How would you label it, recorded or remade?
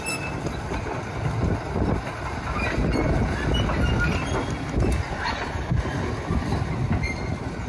recorded